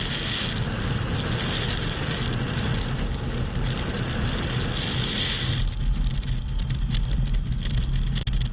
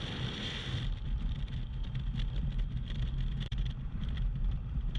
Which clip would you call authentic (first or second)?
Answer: first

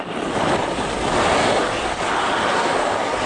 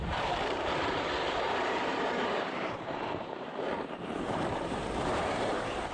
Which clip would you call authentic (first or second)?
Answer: first